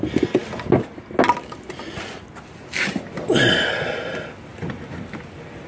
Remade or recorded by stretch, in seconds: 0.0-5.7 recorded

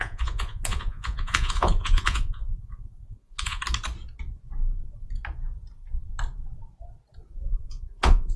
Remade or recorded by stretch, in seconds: 0.0-3.6 remade; 3.6-7.5 recorded; 7.5-8.4 remade

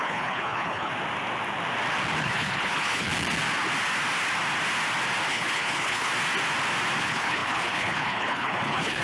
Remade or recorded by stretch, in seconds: 0.0-0.9 remade; 0.9-2.2 recorded; 2.2-3.1 remade; 3.1-5.3 recorded; 5.3-6.1 remade; 6.1-7.0 recorded; 7.0-9.0 remade

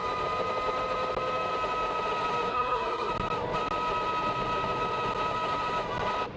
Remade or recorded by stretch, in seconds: 0.0-2.5 recorded; 2.5-3.1 remade; 3.1-6.4 recorded

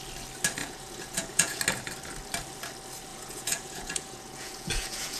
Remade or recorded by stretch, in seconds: 0.0-0.6 recorded; 0.6-1.6 remade; 1.6-3.1 recorded; 3.1-5.2 remade

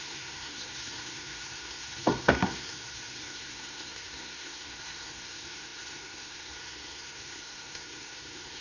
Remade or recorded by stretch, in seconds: 0.0-8.6 remade